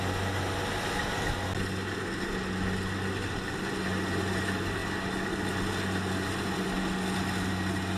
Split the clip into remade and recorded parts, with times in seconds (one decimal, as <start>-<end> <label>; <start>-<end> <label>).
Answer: 0.0-8.0 recorded